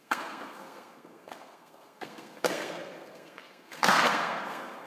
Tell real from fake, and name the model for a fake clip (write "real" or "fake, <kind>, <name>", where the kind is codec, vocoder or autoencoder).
fake, codec, SNAC